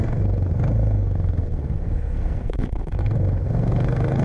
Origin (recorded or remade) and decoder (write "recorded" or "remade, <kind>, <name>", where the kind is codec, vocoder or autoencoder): remade, codec, SNAC